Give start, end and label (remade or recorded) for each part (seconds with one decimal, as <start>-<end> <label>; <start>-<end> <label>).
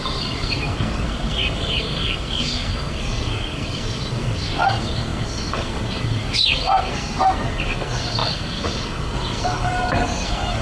0.0-10.6 remade